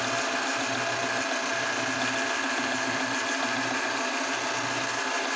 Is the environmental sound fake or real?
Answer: real